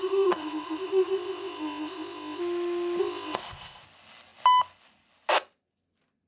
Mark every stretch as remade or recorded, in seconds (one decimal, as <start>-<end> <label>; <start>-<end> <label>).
0.0-2.4 remade; 2.4-3.0 recorded; 3.0-3.8 remade; 3.8-6.3 recorded